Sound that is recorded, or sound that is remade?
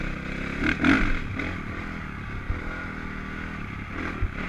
recorded